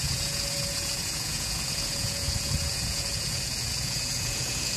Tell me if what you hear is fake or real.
fake